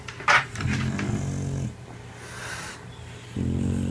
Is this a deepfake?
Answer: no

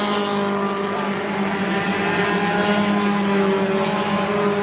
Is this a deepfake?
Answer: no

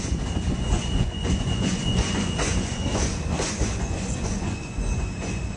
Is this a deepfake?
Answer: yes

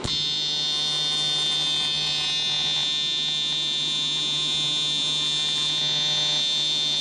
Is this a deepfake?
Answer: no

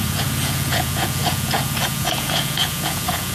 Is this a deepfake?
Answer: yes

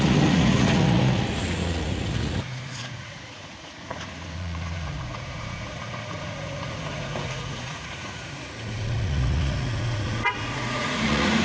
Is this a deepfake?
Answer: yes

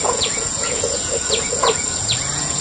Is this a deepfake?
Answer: yes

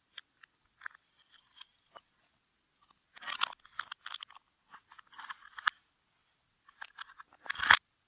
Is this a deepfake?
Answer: no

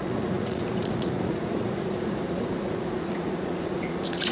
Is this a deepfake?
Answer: yes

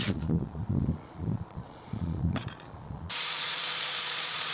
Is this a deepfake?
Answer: yes